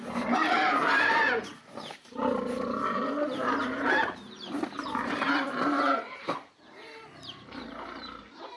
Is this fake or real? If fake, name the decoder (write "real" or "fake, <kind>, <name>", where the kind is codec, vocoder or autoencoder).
fake, vocoder, BigVGAN v2